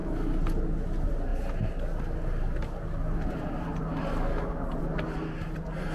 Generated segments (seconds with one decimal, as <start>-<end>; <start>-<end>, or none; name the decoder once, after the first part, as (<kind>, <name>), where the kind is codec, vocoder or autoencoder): none